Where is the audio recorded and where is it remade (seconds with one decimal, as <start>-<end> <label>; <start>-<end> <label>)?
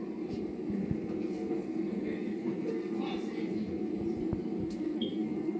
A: 0.0-0.8 recorded; 0.8-3.0 remade; 3.0-3.4 recorded; 3.4-3.9 remade; 3.9-4.6 recorded; 4.6-5.6 remade